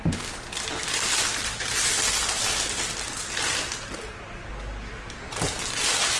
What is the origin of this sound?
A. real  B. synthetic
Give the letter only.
A